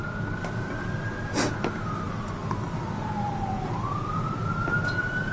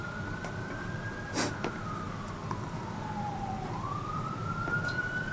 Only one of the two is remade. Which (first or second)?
second